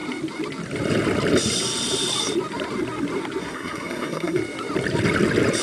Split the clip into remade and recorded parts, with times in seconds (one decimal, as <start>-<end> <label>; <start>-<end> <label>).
0.0-3.4 recorded; 3.4-4.4 remade; 4.4-5.6 recorded